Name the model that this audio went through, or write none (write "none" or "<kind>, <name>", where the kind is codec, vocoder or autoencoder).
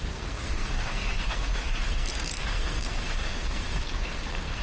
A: codec, SNAC